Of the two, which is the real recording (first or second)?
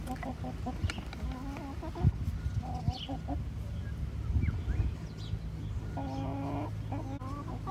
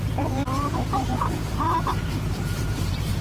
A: first